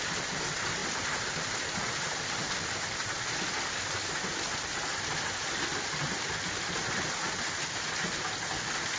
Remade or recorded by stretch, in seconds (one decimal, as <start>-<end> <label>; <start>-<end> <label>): 0.0-9.0 recorded